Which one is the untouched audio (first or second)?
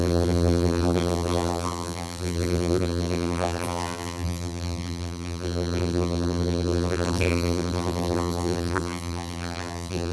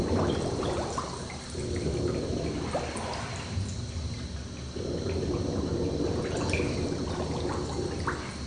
second